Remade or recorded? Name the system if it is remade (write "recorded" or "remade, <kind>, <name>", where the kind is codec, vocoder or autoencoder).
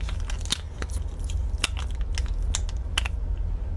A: recorded